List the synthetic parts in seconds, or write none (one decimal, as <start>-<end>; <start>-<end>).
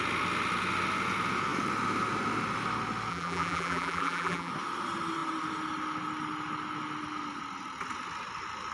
3.1-4.5